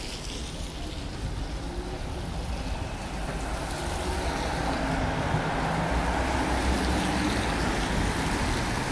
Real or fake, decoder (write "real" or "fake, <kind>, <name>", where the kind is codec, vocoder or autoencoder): real